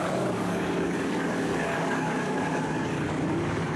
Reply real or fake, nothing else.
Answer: fake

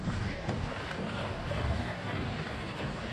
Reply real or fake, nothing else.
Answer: fake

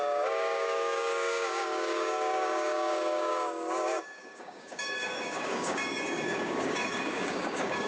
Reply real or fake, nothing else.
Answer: fake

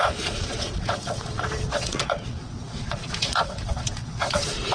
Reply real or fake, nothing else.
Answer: fake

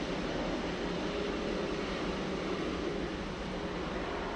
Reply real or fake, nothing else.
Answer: real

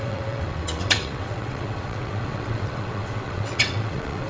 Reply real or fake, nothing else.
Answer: fake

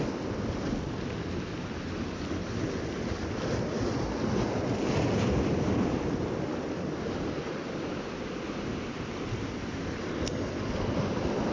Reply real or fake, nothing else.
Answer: real